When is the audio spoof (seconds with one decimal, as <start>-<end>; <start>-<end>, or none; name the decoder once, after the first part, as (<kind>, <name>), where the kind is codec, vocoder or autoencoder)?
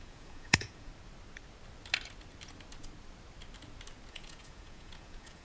0.0-0.9 (vocoder, Vocos); 4.1-5.4